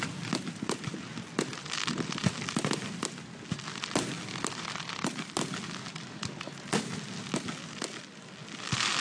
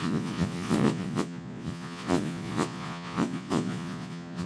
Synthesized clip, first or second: second